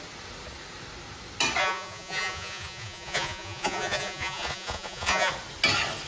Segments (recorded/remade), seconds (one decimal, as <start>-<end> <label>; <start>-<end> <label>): 0.0-1.6 recorded; 1.6-5.3 remade; 5.3-6.1 recorded